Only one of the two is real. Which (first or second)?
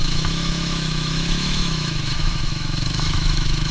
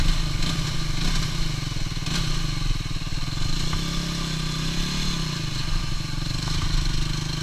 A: second